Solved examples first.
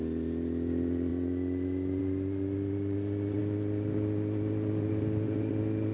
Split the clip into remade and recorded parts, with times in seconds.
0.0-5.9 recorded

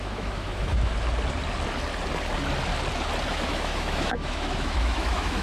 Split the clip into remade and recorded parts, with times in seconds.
0.0-0.9 remade; 0.9-3.3 recorded; 3.3-5.4 remade

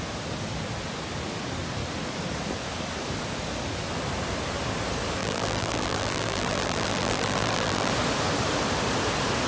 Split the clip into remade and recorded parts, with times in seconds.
0.0-5.2 recorded; 5.2-7.9 remade; 7.9-9.5 recorded

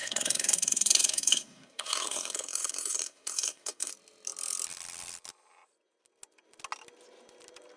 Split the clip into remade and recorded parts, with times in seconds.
0.0-3.9 remade; 3.9-7.8 recorded